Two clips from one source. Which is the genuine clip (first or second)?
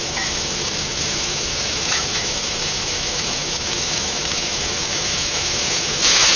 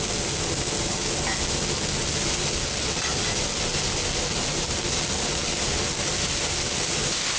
second